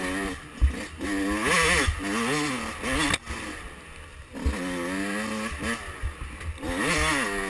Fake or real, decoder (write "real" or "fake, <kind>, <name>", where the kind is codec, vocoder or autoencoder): real